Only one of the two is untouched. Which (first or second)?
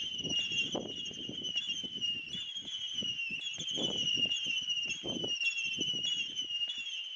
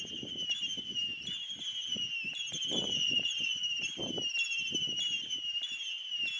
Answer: second